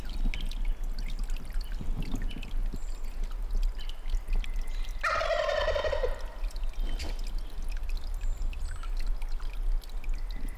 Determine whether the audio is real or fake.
real